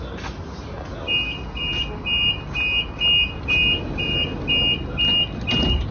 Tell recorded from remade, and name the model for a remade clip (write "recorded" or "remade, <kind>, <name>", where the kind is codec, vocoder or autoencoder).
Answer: recorded